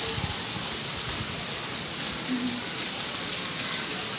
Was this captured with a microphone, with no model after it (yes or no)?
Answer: yes